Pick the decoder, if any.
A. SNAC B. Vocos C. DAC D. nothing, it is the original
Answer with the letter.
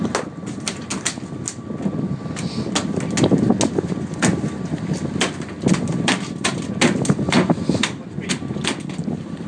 D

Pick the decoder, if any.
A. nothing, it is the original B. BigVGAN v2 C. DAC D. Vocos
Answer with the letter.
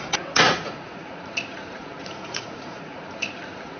D